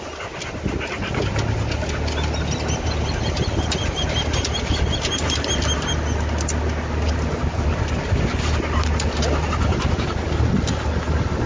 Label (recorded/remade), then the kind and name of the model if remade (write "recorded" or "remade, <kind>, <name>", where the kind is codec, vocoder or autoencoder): recorded